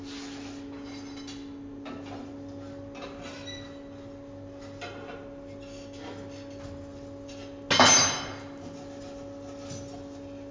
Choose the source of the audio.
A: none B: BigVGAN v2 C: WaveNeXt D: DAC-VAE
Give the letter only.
A